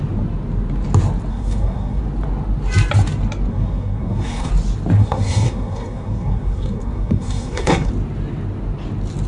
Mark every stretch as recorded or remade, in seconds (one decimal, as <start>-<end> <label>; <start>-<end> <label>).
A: 0.0-1.3 recorded; 1.3-2.0 remade; 2.0-3.5 recorded; 3.5-4.5 remade; 4.5-5.0 recorded; 5.0-7.9 remade; 7.9-9.3 recorded